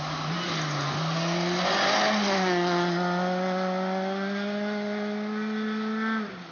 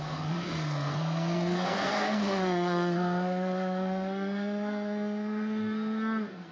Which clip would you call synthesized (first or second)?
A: second